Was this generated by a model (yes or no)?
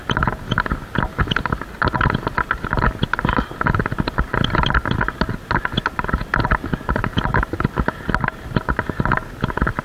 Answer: no